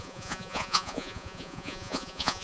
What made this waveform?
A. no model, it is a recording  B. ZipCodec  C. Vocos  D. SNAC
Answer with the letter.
C